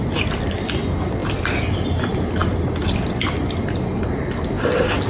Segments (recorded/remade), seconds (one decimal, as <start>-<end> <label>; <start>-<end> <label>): 0.0-2.4 recorded; 2.4-4.4 remade; 4.4-5.1 recorded